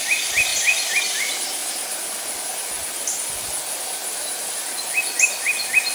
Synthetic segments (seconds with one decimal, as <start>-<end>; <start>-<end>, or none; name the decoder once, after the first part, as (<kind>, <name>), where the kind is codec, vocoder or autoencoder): none